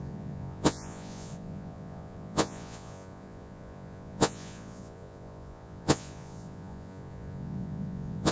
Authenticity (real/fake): fake